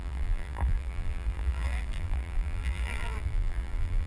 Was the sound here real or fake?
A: fake